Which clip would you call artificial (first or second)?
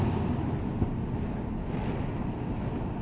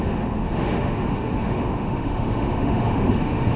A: second